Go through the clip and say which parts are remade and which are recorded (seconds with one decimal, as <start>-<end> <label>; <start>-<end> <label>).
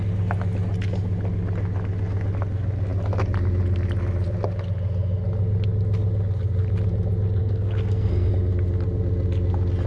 0.0-7.4 recorded; 7.4-8.3 remade; 8.3-9.9 recorded